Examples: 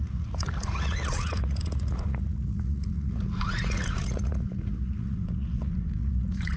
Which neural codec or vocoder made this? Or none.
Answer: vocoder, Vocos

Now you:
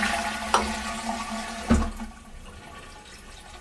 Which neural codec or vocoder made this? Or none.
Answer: none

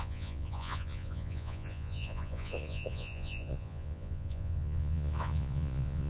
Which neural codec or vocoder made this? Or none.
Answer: vocoder, Vocos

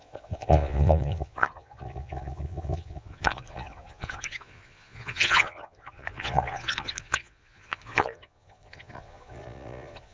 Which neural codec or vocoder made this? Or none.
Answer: vocoder, Vocos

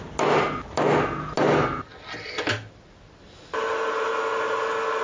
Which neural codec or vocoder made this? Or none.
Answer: none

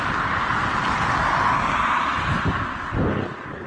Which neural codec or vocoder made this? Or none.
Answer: none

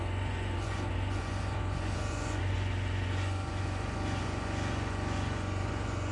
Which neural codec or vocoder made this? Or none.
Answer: vocoder, Vocos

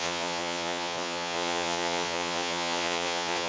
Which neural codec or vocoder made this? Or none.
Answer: vocoder, Vocos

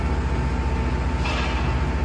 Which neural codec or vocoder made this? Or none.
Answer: none